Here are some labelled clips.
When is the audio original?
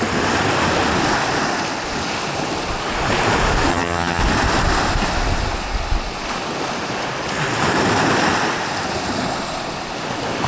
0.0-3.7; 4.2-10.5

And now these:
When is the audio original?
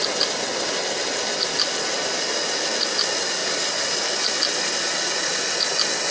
0.0-6.1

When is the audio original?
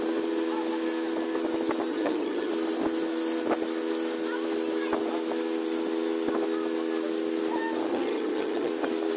0.0-1.9; 2.5-7.9; 8.7-9.2